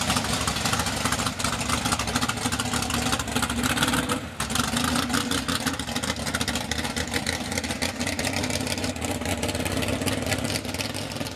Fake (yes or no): no